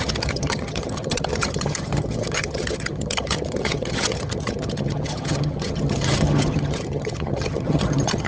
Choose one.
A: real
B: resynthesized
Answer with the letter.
B